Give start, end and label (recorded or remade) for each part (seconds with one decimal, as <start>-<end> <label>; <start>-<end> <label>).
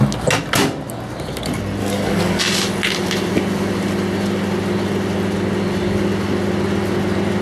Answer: 0.0-1.8 recorded; 1.8-2.4 remade; 2.4-7.4 recorded